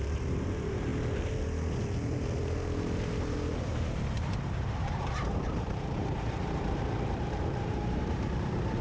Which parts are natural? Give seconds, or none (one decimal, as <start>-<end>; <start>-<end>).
0.9-3.6